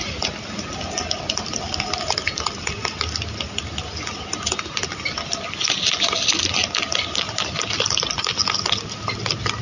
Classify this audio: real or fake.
real